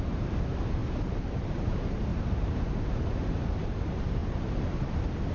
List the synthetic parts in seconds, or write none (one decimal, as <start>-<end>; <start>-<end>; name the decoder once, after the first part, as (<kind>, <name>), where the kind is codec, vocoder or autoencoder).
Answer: 0.0-4.2 (vocoder, BigVGAN v2)